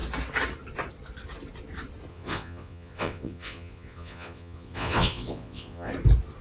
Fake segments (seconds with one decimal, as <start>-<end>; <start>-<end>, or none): 2.1-5.9